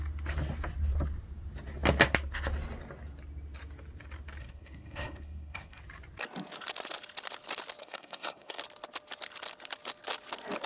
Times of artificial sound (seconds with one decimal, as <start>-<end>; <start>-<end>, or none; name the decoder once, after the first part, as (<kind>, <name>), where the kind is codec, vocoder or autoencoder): 4.4-5.8 (codec, SNAC); 7.8-8.6